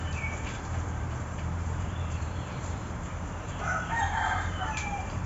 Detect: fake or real fake